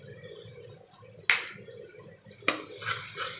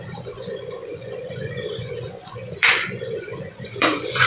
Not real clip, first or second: second